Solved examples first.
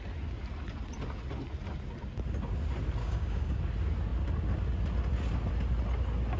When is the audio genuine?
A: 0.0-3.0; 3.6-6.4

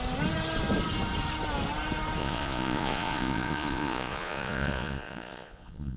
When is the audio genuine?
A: 0.0-2.2

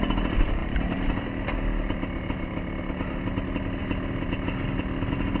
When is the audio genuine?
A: 0.0-5.4

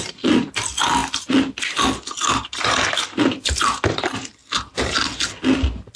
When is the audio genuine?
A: 0.0-6.0

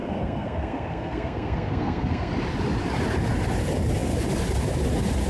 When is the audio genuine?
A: 2.3-5.3